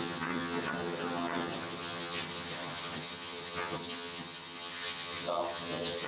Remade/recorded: remade